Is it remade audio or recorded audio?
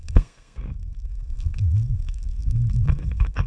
remade